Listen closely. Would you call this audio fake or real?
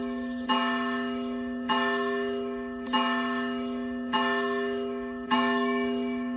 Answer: fake